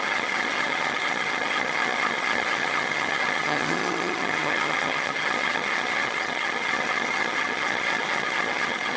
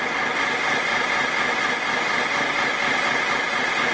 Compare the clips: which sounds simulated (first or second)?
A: first